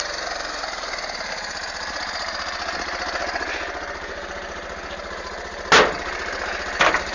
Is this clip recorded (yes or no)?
yes